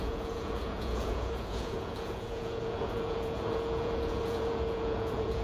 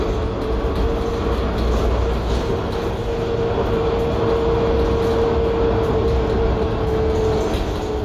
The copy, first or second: first